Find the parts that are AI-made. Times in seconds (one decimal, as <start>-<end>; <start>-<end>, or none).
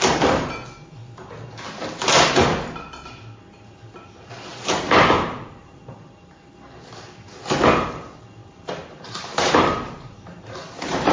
4.5-5.8; 8.4-10.5